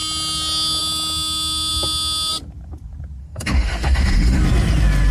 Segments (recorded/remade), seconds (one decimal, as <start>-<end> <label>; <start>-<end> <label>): 0.0-3.2 recorded; 3.2-4.4 remade; 4.4-5.1 recorded

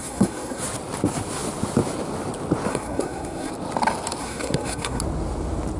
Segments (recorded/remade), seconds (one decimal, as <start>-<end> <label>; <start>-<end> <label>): 0.0-0.6 remade; 0.6-2.7 recorded; 2.7-3.5 remade; 3.5-4.2 recorded; 4.2-5.0 remade; 5.0-5.8 recorded

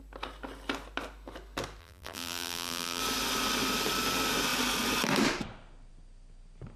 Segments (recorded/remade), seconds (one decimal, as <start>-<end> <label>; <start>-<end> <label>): 0.0-1.8 recorded; 1.8-3.0 remade; 3.0-6.8 recorded

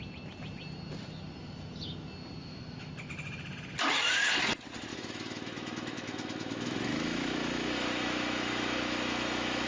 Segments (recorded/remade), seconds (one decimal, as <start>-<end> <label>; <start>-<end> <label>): 0.0-2.4 recorded; 2.4-2.9 remade; 2.9-4.9 recorded; 4.9-9.7 remade

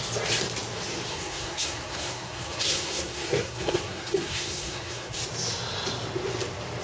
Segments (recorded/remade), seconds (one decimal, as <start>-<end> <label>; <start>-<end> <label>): 0.0-1.1 recorded; 1.1-5.2 remade; 5.2-6.8 recorded

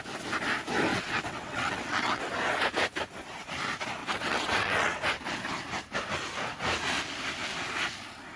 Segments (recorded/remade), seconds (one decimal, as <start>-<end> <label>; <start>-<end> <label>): 0.0-0.9 recorded; 0.9-2.2 remade; 2.2-4.0 recorded; 4.0-5.0 remade; 5.0-8.4 recorded